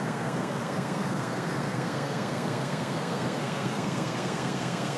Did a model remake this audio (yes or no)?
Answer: yes